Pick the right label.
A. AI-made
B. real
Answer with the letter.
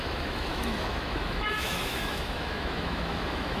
A